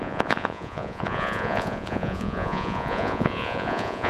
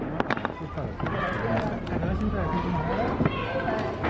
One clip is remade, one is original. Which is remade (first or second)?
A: first